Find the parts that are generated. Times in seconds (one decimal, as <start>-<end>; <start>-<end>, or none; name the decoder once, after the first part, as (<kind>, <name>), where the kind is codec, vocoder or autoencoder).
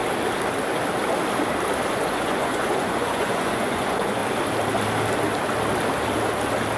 1.9-4.2 (vocoder, Vocos)